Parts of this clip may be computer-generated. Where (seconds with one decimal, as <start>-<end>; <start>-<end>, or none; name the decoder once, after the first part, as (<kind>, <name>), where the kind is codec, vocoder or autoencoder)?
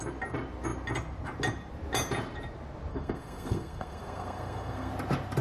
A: 2.9-4.9 (codec, SNAC)